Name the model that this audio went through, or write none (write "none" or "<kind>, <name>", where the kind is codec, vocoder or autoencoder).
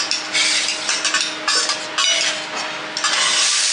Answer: none